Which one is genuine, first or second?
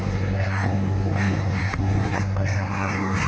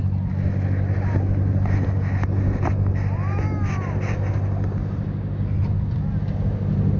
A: second